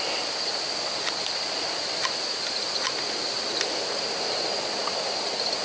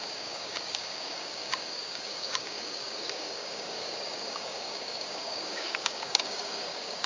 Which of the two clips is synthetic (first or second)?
second